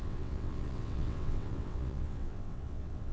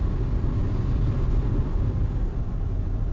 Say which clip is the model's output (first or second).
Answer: first